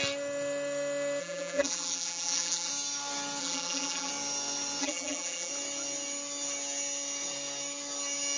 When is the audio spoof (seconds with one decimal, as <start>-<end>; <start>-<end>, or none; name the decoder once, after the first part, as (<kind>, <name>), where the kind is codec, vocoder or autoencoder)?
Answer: 1.2-2.7 (vocoder, BigVGAN v2); 3.4-4.1; 4.8-5.5